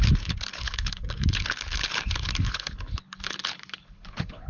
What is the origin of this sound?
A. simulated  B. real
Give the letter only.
A